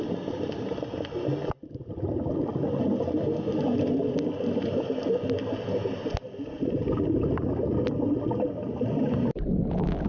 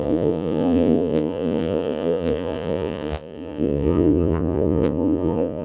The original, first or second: first